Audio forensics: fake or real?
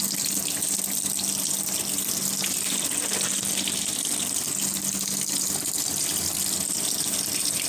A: real